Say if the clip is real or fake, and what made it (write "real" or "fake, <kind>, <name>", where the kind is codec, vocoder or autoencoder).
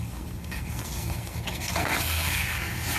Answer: fake, codec, SNAC